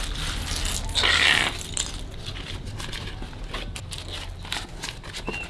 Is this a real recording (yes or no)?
yes